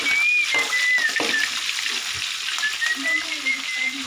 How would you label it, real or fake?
real